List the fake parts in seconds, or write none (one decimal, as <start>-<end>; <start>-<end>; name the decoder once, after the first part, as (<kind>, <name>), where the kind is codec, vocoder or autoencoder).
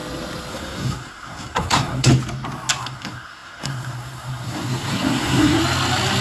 0.5-2.1 (codec, SNAC); 2.8-5.6